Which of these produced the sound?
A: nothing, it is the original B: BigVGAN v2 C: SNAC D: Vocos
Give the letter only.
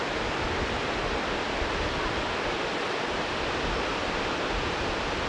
A